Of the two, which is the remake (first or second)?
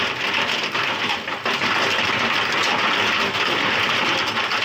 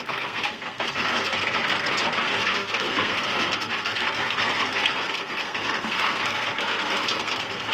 second